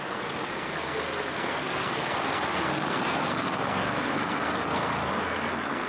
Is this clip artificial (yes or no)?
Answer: yes